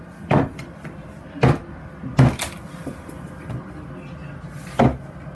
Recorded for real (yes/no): yes